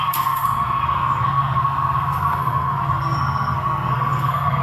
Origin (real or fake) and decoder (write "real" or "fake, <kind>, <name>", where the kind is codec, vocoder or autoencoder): fake, codec, SNAC